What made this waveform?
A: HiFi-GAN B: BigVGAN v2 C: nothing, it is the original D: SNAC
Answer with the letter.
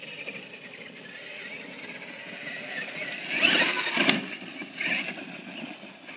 C